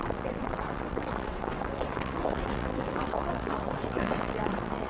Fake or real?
fake